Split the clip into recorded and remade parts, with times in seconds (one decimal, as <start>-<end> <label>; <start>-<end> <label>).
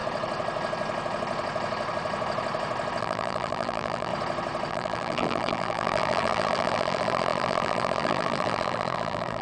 0.0-3.0 recorded; 3.0-4.1 remade; 4.1-4.7 recorded; 4.7-9.4 remade